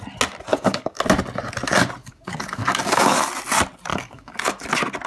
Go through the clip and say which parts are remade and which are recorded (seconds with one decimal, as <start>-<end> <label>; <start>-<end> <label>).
0.0-0.5 recorded; 0.5-1.0 remade; 1.0-2.0 recorded; 2.0-3.3 remade; 3.3-3.9 recorded; 3.9-4.5 remade; 4.5-5.1 recorded